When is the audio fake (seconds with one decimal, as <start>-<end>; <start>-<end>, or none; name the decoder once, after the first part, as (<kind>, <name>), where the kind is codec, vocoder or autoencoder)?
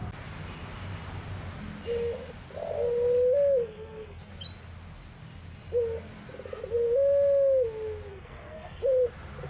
3.6-4.3 (codec, SNAC); 8.1-8.8